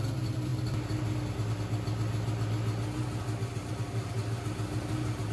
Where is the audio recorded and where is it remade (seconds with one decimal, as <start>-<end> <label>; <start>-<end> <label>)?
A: 0.0-5.3 recorded